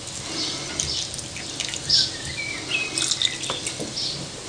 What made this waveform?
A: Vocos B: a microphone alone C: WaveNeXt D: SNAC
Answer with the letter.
B